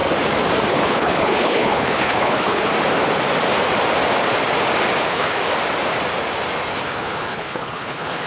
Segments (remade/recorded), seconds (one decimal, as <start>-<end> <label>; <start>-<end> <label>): 0.0-0.7 recorded; 0.7-2.7 remade; 2.7-5.0 recorded; 5.0-5.4 remade; 5.4-6.7 recorded; 6.7-8.3 remade